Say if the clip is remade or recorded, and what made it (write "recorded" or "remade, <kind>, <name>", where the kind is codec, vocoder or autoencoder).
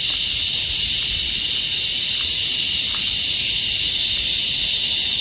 remade, vocoder, BigVGAN v2